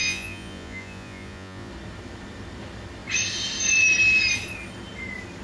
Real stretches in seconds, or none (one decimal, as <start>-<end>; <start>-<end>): 1.7-5.4